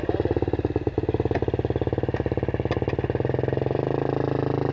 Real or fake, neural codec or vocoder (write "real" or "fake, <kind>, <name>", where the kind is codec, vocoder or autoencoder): real